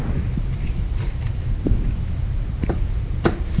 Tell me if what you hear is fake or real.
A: real